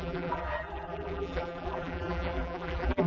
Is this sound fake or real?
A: fake